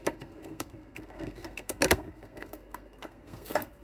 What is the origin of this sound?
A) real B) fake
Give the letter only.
B